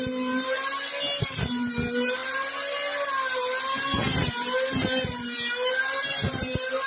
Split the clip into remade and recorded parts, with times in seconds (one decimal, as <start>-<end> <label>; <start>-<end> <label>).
0.0-6.9 recorded